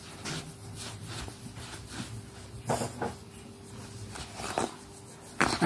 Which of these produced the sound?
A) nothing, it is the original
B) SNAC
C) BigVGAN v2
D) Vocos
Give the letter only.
A